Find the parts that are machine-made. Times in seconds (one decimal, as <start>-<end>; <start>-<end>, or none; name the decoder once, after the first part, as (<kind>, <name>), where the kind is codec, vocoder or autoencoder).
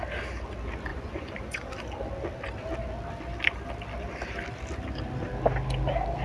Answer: 0.9-1.7 (vocoder, Vocos)